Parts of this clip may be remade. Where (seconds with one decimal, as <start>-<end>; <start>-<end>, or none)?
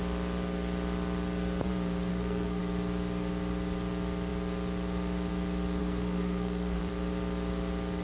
2.1-2.6; 5.8-6.8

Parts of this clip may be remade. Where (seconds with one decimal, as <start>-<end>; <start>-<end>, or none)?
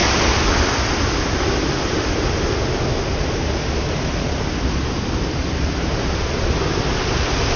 none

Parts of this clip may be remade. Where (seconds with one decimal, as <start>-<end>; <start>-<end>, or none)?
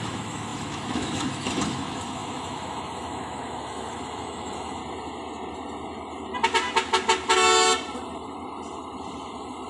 0.0-4.8